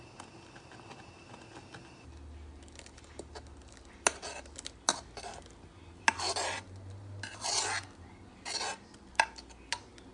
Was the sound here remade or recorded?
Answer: recorded